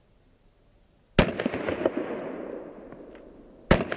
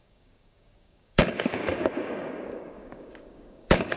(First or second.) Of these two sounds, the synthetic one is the second